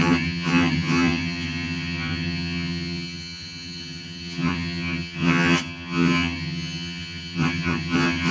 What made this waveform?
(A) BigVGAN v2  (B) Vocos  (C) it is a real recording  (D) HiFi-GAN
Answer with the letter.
D